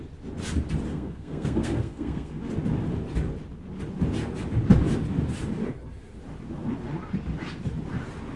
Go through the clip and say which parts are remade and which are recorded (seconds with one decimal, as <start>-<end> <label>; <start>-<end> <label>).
0.0-0.9 recorded; 0.9-2.4 remade; 2.4-8.4 recorded